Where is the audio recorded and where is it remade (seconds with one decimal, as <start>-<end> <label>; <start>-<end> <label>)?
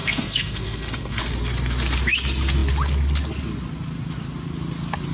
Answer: 0.0-1.2 remade; 1.2-5.1 recorded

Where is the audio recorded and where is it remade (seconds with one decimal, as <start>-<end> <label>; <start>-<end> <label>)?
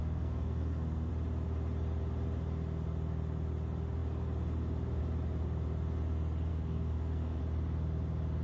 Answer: 0.0-1.1 remade; 1.1-6.5 recorded; 6.5-7.4 remade; 7.4-8.4 recorded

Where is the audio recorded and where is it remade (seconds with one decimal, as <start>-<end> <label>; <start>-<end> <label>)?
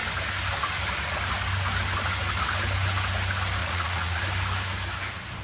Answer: 0.0-3.6 recorded; 3.6-4.2 remade; 4.2-5.4 recorded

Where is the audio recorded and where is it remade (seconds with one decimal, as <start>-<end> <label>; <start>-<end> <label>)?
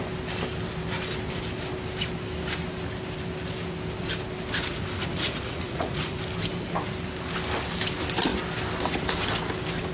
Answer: 0.0-4.7 recorded; 4.7-6.2 remade; 6.2-9.9 recorded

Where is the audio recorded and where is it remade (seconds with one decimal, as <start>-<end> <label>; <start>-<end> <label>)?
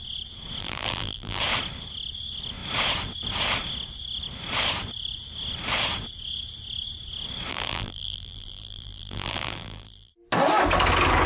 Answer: 0.0-0.6 recorded; 0.6-1.4 remade; 1.4-7.5 recorded; 7.5-10.1 remade; 10.1-11.3 recorded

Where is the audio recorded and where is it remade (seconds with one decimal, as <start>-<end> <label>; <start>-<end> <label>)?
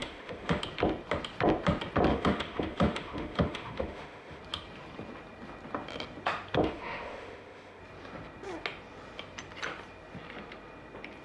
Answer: 0.0-0.6 remade; 0.6-2.1 recorded; 2.1-4.4 remade; 4.4-6.6 recorded; 6.6-7.8 remade; 7.8-11.2 recorded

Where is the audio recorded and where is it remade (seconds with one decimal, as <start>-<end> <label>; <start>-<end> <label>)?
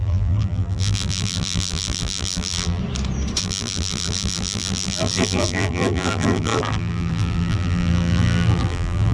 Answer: 0.0-2.8 remade; 2.8-3.4 recorded; 3.4-9.1 remade